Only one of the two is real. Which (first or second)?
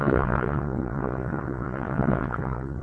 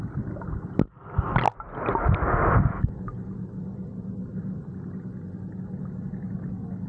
second